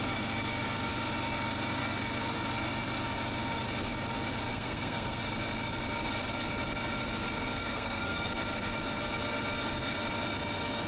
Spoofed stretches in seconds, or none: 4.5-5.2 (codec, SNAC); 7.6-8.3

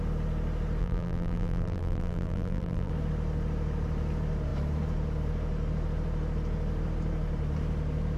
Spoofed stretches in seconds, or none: 0.8-2.9 (vocoder, BigVGAN v2)

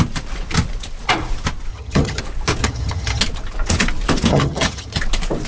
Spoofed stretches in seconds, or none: 1.7-2.2 (vocoder, HiFi-GAN); 2.6-3.2; 4.3-5.0

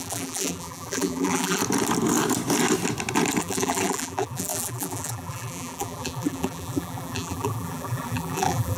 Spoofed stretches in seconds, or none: 0.0-1.6 (vocoder, BigVGAN v2); 3.4-8.8

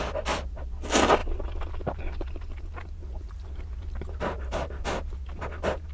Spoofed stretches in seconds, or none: none

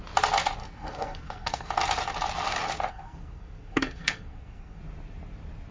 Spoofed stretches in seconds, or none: 0.6-1.7 (codec, SNAC); 2.9-4.8